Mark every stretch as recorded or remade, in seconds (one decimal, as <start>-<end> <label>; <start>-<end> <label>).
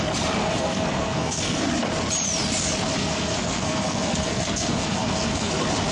0.0-0.4 recorded; 0.4-1.6 remade; 1.6-3.0 recorded; 3.0-5.5 remade; 5.5-5.9 recorded